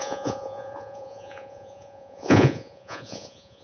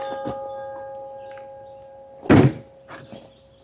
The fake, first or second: first